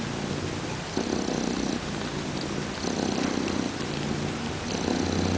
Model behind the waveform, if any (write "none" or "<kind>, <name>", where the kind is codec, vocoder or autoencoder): none